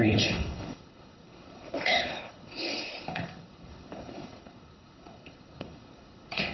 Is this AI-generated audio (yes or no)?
yes